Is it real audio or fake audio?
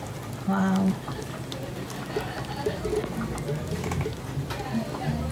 real